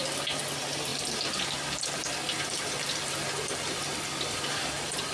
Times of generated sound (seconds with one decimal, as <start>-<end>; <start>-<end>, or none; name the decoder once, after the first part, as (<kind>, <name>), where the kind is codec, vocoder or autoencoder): none

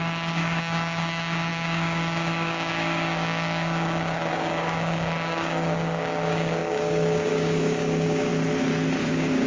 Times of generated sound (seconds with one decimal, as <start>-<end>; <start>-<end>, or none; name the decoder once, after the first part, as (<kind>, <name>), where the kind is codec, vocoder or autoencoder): 0.0-8.3 (codec, DAC); 9.1-9.5

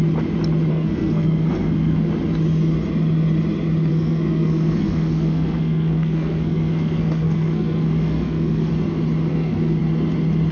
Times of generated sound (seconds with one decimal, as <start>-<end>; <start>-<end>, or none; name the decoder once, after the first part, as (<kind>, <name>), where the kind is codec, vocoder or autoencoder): 0.7-2.1 (codec, SNAC); 3.9-8.7; 9.3-9.8